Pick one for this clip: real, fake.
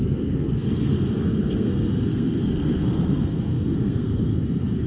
fake